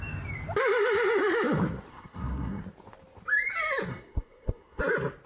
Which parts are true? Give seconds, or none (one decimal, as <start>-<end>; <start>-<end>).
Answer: 0.0-1.9; 2.6-3.9; 4.8-5.3